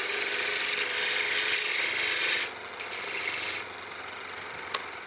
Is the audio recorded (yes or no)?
yes